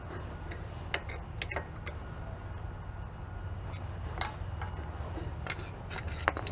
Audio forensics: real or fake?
real